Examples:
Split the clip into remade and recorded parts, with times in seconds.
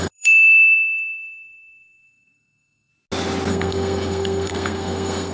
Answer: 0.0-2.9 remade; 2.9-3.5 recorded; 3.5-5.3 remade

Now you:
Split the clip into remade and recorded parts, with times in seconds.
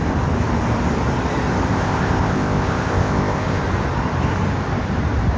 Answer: 0.0-1.7 recorded; 1.7-3.6 remade; 3.6-5.4 recorded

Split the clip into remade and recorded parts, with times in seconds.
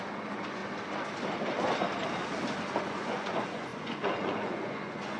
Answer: 0.0-0.6 remade; 0.6-2.8 recorded; 2.8-5.2 remade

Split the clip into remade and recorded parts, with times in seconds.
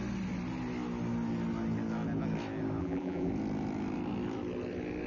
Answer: 0.0-2.8 recorded; 2.8-3.3 remade; 3.3-5.1 recorded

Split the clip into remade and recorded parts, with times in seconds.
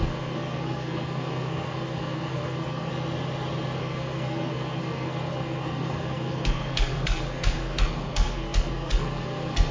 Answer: 0.0-2.9 remade; 2.9-3.8 recorded; 3.8-9.7 remade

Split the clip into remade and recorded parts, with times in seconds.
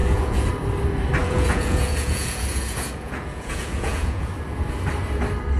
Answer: 0.0-0.5 remade; 0.5-1.2 recorded; 1.2-4.3 remade; 4.3-5.6 recorded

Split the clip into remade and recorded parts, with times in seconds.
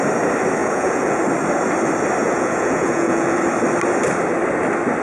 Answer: 0.0-0.6 recorded; 0.6-1.2 remade; 1.2-2.2 recorded; 2.2-3.4 remade; 3.4-5.0 recorded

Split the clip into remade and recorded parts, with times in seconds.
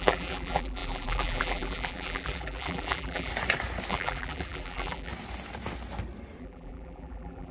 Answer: 0.0-3.3 remade; 3.3-3.9 recorded; 3.9-5.1 remade; 5.1-6.4 recorded; 6.4-7.5 remade